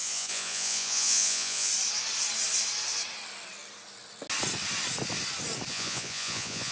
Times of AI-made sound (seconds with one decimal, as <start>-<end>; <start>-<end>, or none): 0.0-1.7; 5.7-6.7